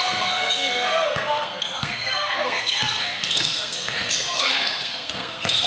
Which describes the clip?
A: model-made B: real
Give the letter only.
A